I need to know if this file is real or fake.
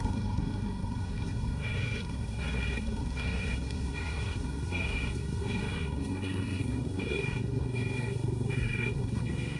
fake